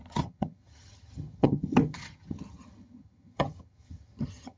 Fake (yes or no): yes